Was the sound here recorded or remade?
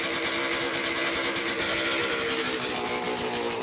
recorded